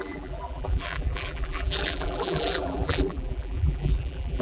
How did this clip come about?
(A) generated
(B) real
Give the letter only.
A